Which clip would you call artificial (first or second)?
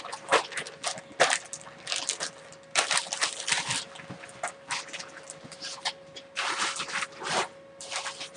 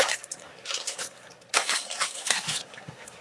second